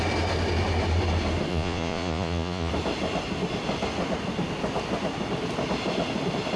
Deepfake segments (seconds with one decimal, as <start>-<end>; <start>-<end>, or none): 1.5-2.7